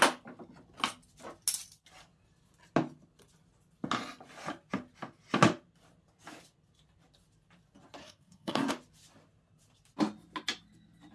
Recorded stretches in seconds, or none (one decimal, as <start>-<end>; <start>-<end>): 0.0-8.0; 8.7-11.1